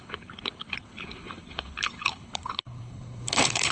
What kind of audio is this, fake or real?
fake